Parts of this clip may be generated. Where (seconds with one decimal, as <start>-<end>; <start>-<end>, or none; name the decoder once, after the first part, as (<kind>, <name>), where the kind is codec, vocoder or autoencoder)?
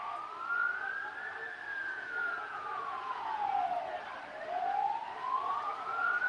1.7-3.6 (vocoder, Vocos); 5.2-6.3